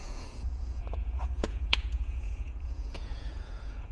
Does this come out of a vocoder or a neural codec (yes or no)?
yes